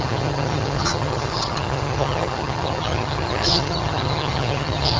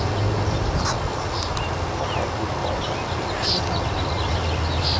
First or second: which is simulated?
first